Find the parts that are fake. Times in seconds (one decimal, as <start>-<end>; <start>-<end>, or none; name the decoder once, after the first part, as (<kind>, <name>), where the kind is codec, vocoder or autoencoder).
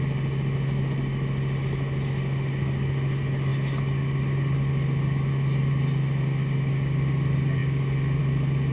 none